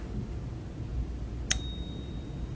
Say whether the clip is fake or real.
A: real